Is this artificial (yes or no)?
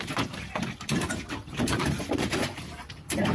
yes